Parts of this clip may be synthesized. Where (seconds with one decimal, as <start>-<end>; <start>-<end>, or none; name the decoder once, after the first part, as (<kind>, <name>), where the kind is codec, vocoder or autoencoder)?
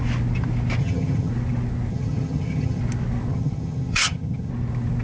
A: 0.8-1.3 (vocoder, HiFi-GAN); 1.9-2.8; 3.3-4.5